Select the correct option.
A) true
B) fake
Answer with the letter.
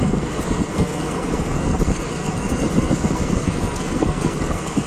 B